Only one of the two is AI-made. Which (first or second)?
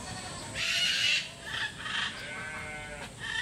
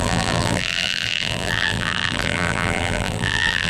second